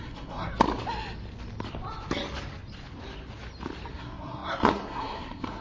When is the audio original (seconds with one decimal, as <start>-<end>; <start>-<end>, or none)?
0.5-3.9